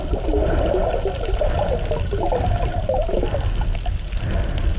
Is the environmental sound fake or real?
real